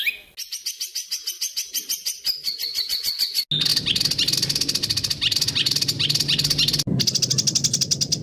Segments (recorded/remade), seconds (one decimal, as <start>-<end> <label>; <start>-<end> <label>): 0.0-8.2 recorded